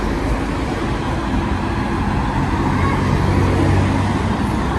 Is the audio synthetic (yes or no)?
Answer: no